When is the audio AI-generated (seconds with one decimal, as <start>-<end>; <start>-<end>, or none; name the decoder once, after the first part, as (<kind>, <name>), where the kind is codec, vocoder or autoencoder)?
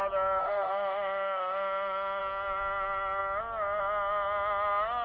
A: 0.4-2.2 (autoencoder, DAC-VAE)